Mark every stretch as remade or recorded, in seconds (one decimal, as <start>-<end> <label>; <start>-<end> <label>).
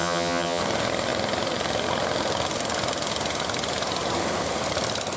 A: 0.0-0.6 remade; 0.6-5.2 recorded